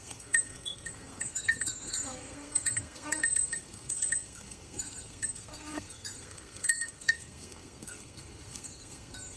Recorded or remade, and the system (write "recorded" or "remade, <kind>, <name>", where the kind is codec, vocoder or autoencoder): remade, codec, SNAC